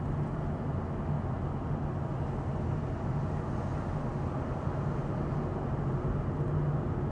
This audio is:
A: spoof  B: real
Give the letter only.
B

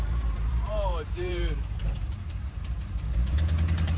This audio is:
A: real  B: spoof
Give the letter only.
B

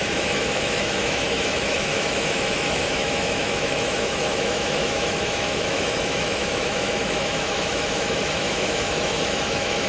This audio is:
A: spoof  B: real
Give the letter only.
A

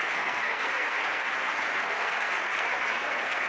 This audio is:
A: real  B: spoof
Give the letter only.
B